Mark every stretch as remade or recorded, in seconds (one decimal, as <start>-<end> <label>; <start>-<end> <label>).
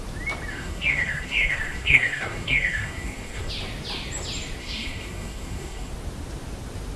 0.0-0.5 recorded; 0.5-3.5 remade; 3.5-4.6 recorded; 4.6-5.9 remade; 5.9-7.0 recorded